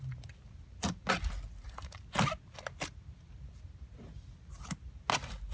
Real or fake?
real